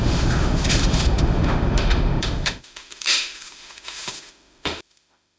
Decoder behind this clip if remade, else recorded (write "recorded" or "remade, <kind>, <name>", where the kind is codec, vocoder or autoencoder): remade, autoencoder, DAC-VAE